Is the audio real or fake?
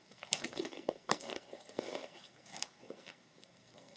fake